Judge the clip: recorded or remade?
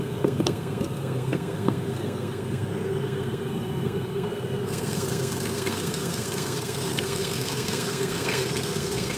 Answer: remade